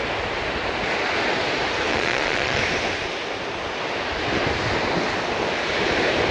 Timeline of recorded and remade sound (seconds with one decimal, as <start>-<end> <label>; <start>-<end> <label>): 0.0-1.9 recorded; 1.9-2.6 remade; 2.6-6.3 recorded